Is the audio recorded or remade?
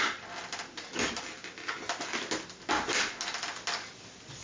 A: recorded